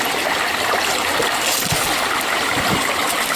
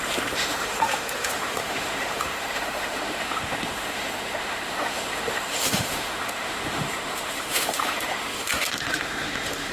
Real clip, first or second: first